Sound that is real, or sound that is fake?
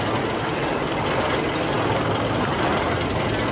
real